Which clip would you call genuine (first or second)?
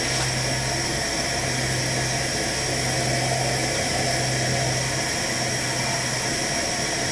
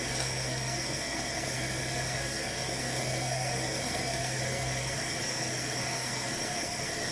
first